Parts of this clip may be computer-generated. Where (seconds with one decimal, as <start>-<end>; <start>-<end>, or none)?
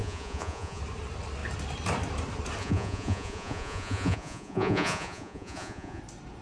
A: 0.0-0.8; 2.6-6.0